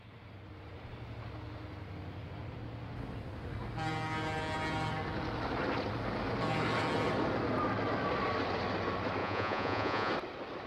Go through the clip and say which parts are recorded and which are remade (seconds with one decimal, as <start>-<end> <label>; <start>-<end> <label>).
0.0-9.2 recorded; 9.2-10.1 remade; 10.1-10.7 recorded